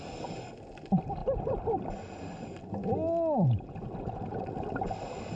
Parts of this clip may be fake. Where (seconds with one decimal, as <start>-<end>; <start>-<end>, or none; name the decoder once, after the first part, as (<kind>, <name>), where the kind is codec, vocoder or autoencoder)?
none